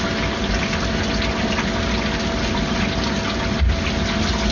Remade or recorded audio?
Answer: recorded